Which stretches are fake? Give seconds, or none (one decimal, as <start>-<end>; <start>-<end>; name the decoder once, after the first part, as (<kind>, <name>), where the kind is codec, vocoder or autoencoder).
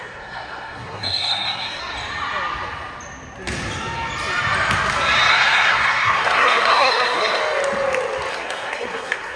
0.0-1.8 (codec, SNAC); 5.3-7.4; 8.3-9.4